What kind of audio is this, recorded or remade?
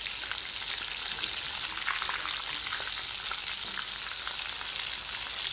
recorded